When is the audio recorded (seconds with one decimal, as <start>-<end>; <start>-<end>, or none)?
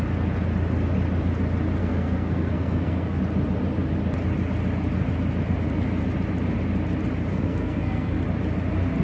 0.0-1.8; 3.2-7.3; 8.2-9.0